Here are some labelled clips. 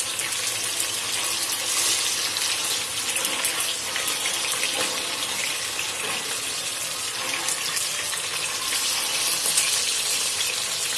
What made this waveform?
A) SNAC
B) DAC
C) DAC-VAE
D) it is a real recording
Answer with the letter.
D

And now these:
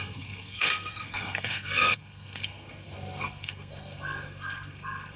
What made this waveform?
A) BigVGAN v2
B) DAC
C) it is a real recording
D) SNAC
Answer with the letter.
D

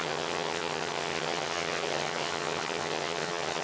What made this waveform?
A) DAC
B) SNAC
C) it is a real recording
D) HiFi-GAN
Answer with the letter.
D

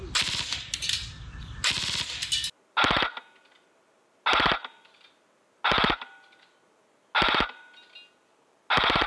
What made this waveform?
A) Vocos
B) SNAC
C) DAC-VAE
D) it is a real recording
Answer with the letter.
D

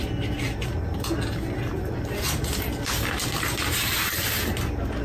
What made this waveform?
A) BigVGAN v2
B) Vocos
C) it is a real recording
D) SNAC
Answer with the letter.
C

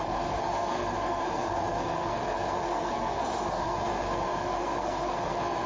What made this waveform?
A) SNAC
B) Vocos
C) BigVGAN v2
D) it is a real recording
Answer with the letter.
A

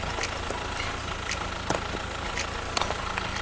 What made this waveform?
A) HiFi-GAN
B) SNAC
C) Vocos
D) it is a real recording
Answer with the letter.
D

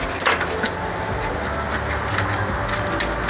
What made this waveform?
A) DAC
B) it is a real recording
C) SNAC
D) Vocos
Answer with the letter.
B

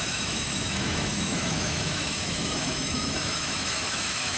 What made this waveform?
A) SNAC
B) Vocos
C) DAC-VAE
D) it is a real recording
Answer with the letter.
C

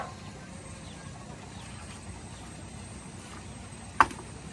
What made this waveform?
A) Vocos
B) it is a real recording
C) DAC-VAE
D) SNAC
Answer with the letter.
B